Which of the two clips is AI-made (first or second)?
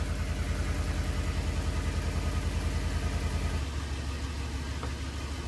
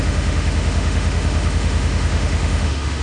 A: second